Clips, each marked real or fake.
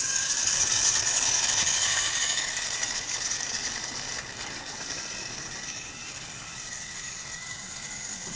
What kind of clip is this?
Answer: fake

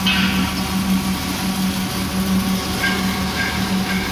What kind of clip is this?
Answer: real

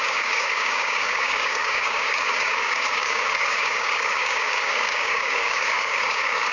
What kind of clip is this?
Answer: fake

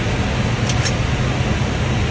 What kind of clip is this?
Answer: real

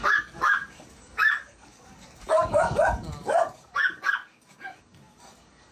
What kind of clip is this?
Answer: fake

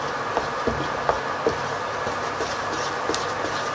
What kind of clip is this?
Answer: real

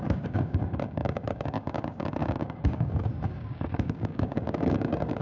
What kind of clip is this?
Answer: fake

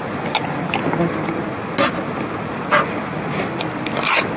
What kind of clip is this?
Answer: real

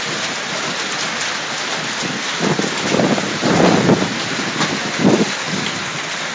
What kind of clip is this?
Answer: real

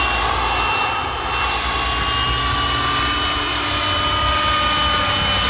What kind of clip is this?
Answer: real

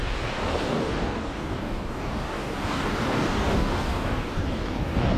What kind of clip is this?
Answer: fake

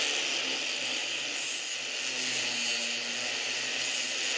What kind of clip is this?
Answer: real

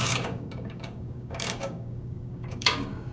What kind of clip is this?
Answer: fake